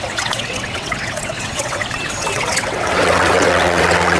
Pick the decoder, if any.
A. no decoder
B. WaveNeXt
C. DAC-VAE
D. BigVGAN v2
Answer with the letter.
B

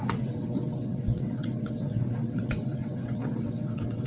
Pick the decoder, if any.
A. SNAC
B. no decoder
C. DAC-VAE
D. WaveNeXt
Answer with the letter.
D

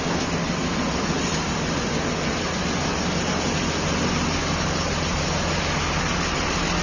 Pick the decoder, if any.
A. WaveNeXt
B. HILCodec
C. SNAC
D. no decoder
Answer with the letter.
D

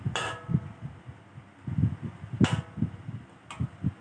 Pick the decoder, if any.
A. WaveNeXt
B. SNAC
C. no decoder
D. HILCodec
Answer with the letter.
C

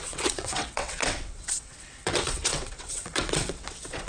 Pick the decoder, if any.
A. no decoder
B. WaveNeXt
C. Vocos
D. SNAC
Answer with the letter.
B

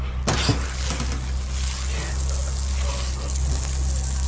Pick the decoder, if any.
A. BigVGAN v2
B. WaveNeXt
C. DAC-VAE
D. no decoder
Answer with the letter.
D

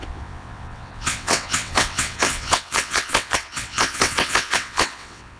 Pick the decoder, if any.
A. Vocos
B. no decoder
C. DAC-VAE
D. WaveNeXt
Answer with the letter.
D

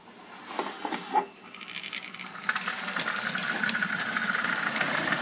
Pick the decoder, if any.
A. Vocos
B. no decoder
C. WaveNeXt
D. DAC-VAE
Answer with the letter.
B